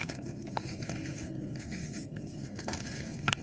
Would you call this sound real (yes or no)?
no